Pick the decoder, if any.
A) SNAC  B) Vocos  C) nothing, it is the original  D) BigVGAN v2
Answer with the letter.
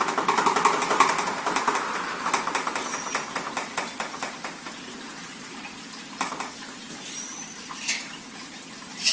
C